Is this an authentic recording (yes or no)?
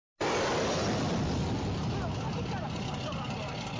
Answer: yes